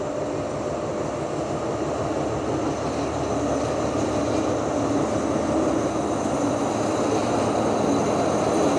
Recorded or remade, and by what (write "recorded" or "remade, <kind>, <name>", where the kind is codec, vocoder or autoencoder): recorded